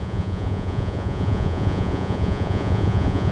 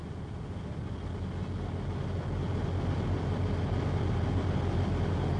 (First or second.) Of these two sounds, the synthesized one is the first